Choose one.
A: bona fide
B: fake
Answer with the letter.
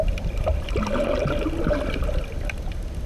A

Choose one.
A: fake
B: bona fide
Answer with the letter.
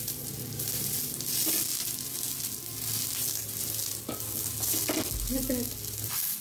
B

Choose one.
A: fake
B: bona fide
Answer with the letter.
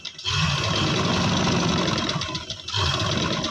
B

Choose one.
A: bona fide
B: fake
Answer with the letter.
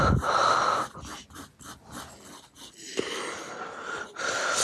A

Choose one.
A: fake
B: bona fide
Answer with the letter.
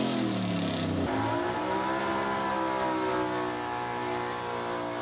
B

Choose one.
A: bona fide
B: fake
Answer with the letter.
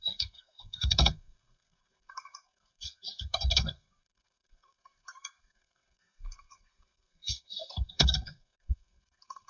B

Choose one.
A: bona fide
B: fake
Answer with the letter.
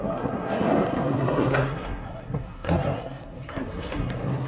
B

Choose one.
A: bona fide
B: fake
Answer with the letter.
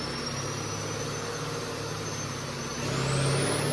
A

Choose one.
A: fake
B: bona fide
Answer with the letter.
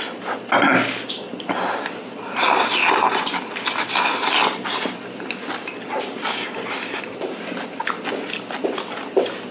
B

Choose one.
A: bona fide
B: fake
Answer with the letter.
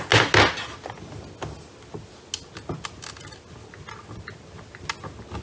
A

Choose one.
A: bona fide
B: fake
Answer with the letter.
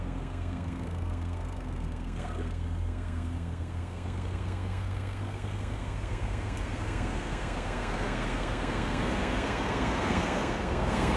B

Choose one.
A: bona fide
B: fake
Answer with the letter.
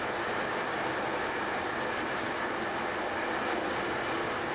A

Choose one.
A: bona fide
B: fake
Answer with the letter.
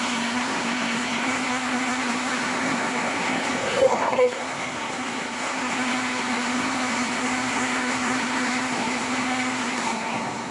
B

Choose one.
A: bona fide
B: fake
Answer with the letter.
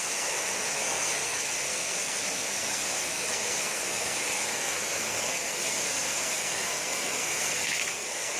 B